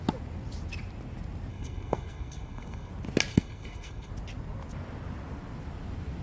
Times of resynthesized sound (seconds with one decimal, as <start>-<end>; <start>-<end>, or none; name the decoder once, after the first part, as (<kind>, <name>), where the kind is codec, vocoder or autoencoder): 1.5-2.9 (codec, SNAC); 3.3-4.1